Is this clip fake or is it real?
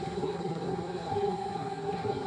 fake